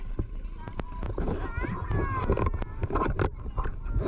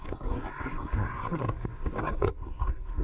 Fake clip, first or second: second